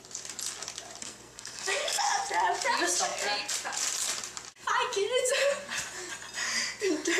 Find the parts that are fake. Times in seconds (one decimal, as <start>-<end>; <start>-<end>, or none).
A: 1.0-2.0